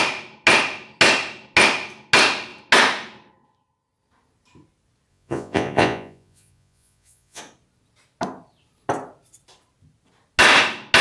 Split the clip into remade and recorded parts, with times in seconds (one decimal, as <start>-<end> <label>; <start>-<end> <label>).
0.0-5.1 recorded; 5.1-7.4 remade; 7.4-11.0 recorded